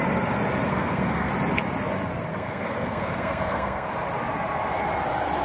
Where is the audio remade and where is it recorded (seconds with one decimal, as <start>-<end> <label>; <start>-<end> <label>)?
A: 0.0-0.7 recorded; 0.7-1.3 remade; 1.3-2.3 recorded; 2.3-3.9 remade; 3.9-5.4 recorded